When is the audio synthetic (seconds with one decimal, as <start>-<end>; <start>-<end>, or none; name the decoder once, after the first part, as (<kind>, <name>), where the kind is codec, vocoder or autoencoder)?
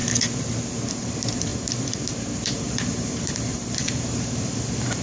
0.9-5.0 (vocoder, BigVGAN v2)